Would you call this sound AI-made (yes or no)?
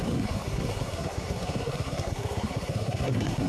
yes